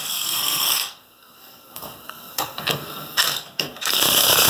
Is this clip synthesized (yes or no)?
yes